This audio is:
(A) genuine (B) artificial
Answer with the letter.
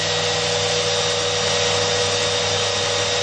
A